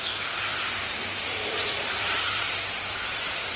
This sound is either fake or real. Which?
fake